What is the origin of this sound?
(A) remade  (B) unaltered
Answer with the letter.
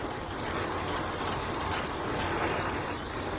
B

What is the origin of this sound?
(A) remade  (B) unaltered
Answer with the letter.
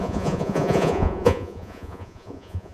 A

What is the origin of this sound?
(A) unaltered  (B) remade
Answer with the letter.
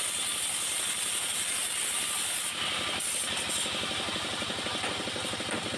A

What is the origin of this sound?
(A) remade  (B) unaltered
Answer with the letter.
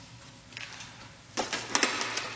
B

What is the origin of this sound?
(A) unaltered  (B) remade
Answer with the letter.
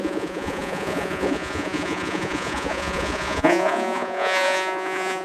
B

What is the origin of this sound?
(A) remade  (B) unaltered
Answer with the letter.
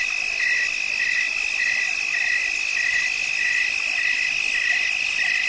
B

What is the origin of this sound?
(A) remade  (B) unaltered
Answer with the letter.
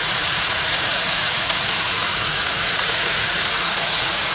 A